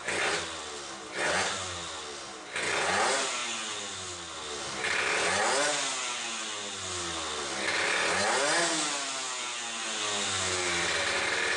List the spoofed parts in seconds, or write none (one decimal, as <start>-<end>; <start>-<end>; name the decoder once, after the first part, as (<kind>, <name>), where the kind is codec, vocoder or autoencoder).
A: none

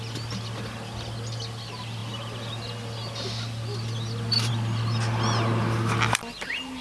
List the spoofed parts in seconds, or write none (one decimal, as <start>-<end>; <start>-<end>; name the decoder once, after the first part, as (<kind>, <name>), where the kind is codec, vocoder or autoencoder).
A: none

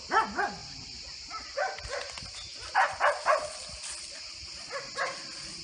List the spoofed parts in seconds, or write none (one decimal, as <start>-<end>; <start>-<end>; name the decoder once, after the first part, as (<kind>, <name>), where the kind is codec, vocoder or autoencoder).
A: 0.6-1.8 (vocoder, BigVGAN v2); 2.5-4.9